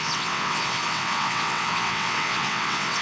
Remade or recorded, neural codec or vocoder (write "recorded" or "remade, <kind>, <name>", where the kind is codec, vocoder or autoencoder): remade, vocoder, WaveNeXt